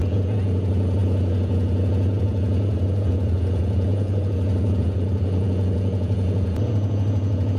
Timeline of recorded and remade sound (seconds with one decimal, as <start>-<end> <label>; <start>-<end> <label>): 0.0-7.6 remade